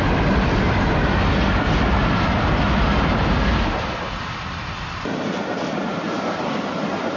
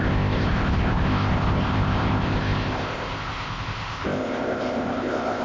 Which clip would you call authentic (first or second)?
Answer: first